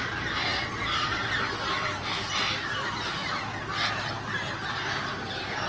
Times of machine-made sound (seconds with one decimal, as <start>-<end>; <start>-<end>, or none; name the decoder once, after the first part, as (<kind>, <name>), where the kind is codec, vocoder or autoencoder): none